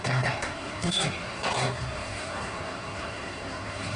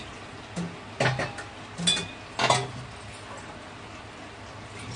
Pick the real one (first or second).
second